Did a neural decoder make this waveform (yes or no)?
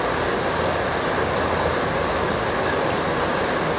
no